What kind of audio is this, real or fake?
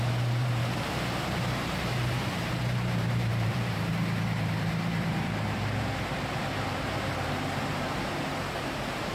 fake